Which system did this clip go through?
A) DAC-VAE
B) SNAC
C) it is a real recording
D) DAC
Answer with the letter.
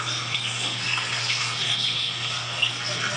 B